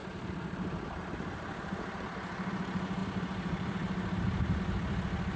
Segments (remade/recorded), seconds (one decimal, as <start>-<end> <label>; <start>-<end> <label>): 0.0-2.5 remade; 2.5-3.0 recorded; 3.0-4.6 remade; 4.6-5.4 recorded